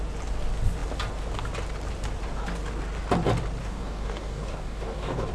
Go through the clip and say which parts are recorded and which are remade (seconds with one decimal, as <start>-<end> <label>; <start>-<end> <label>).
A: 0.0-3.6 recorded; 3.6-5.3 remade

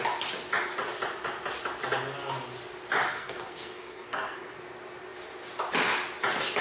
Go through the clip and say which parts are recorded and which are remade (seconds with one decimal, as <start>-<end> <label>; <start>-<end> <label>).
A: 0.0-3.1 recorded; 3.1-4.5 remade; 4.5-6.6 recorded